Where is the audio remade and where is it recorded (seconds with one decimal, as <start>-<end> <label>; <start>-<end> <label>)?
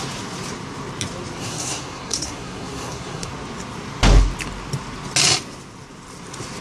0.0-1.4 recorded; 1.4-3.3 remade; 3.3-6.6 recorded